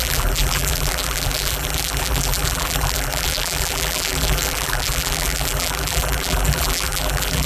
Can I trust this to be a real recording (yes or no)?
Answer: no